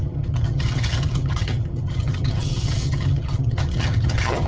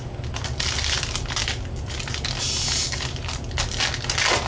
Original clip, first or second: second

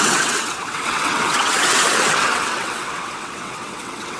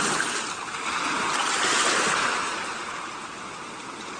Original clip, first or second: second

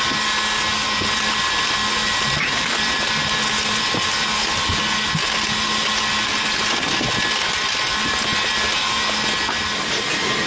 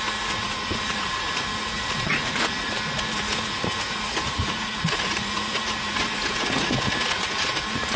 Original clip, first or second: first